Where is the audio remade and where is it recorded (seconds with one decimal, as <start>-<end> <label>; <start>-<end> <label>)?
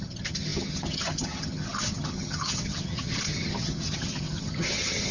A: 0.0-5.1 remade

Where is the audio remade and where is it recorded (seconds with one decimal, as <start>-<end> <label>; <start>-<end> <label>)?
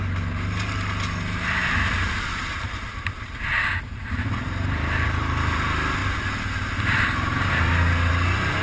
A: 0.0-8.6 recorded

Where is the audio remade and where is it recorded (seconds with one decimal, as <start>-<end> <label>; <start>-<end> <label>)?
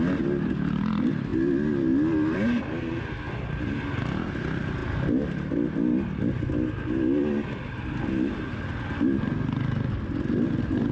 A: 0.0-10.9 recorded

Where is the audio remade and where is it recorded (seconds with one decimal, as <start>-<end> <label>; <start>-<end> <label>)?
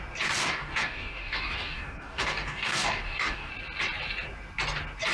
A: 0.0-0.4 recorded; 0.4-3.5 remade; 3.5-5.1 recorded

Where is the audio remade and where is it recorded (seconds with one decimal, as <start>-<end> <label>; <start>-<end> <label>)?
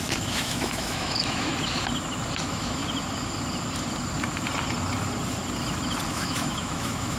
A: 0.0-1.5 remade; 1.5-2.4 recorded; 2.4-2.8 remade; 2.8-6.1 recorded; 6.1-7.2 remade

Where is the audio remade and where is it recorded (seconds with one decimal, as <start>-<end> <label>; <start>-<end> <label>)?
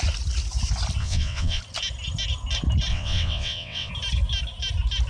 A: 0.0-1.0 recorded; 1.0-1.6 remade; 1.6-2.9 recorded; 2.9-3.9 remade; 3.9-5.1 recorded